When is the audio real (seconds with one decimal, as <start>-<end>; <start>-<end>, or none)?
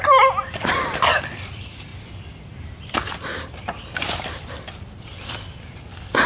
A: 0.0-6.3